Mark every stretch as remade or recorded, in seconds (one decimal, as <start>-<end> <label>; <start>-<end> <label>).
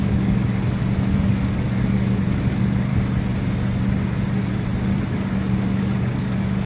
0.0-2.9 remade; 2.9-5.0 recorded; 5.0-6.7 remade